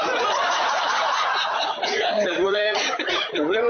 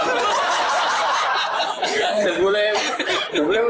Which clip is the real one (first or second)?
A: second